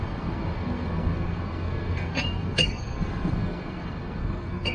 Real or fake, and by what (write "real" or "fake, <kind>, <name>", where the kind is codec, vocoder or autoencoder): fake, codec, SNAC